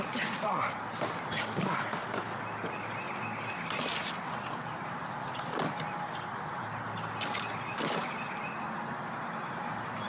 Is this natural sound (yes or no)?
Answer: yes